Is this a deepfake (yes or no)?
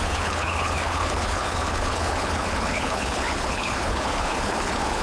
yes